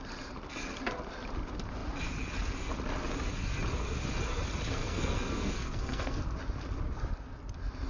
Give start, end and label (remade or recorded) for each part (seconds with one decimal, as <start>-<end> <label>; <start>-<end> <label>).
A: 0.0-4.7 recorded; 4.7-6.2 remade; 6.2-7.9 recorded